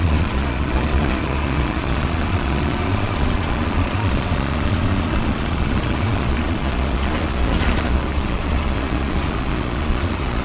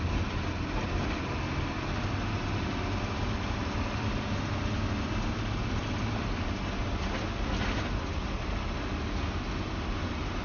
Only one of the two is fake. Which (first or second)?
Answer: first